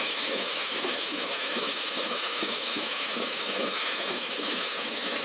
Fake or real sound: fake